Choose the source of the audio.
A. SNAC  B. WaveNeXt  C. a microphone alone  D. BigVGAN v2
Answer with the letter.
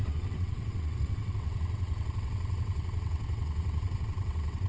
B